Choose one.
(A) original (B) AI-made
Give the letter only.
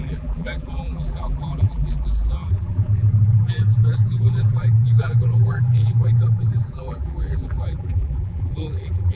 B